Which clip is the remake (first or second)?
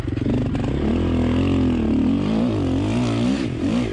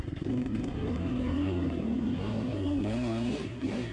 second